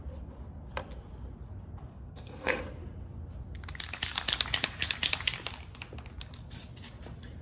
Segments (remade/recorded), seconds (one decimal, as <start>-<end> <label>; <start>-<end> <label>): 0.0-1.9 recorded; 1.9-2.6 remade; 2.6-7.4 recorded